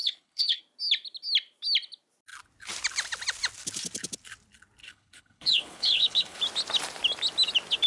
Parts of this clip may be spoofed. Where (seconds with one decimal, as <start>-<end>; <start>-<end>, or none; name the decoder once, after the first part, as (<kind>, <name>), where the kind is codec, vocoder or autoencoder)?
0.0-0.6 (codec, HILCodec); 4.8-6.4